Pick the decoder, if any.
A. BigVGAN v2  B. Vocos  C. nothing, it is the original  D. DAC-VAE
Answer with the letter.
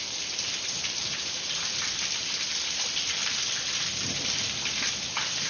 C